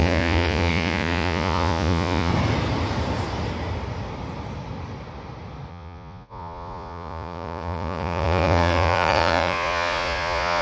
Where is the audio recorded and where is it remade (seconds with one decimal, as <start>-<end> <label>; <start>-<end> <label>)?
0.0-2.3 remade; 2.3-5.7 recorded; 5.7-10.6 remade